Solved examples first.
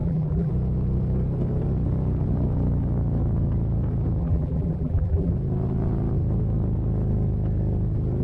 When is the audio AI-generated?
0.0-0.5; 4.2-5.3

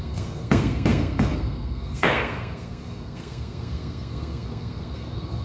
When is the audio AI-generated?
0.0-5.4

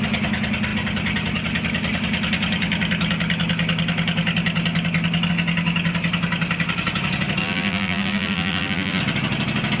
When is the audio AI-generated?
7.4-9.0

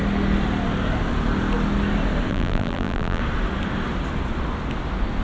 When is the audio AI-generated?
2.3-3.2

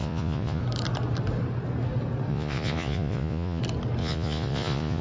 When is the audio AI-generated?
0.0-0.6; 2.3-3.6; 4.0-5.0

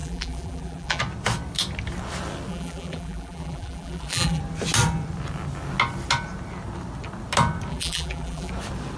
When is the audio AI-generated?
0.0-1.0; 2.5-4.4; 7.7-8.5

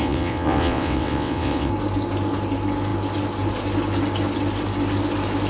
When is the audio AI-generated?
0.0-1.7

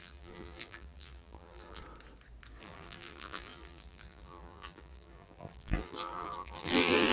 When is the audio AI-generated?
0.0-1.8; 2.6-7.1